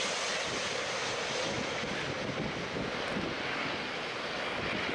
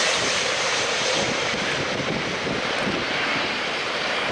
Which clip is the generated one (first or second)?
second